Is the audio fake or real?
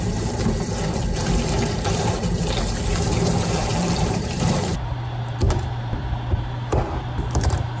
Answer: fake